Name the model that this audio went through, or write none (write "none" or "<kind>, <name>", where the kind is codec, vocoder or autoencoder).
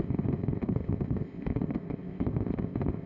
codec, ZipCodec